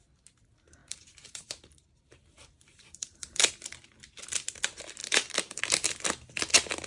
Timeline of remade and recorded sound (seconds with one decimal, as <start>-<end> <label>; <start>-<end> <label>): 0.0-0.8 recorded; 0.8-3.5 remade; 3.5-5.0 recorded; 5.0-5.6 remade; 5.6-6.9 recorded